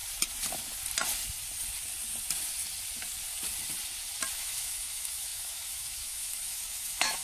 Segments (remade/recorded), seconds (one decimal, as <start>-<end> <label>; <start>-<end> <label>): 0.0-4.3 recorded; 4.3-7.2 remade